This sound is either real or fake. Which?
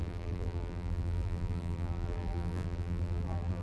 fake